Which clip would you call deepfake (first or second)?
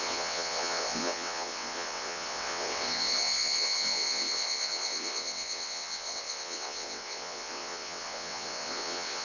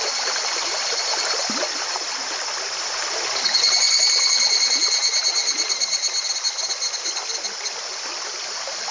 first